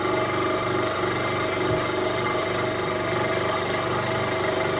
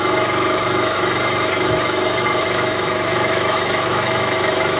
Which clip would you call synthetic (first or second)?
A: second